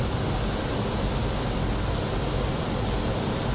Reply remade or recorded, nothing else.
recorded